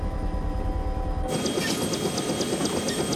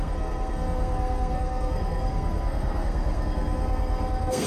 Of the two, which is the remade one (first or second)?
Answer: second